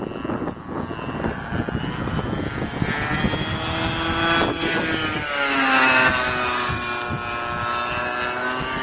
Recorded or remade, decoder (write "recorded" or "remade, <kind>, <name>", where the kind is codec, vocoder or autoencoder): recorded